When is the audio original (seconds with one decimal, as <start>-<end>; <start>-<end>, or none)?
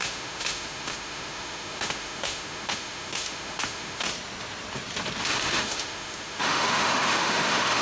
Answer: 4.1-5.2